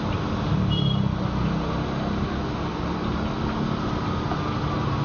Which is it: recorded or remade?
recorded